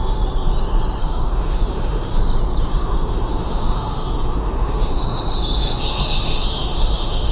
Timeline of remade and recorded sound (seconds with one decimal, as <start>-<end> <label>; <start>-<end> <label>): 0.0-1.0 recorded; 1.0-2.2 remade; 2.2-2.7 recorded; 2.7-7.3 remade